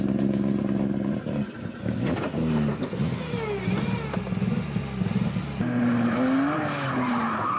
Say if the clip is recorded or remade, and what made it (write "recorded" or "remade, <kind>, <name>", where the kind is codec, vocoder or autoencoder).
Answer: recorded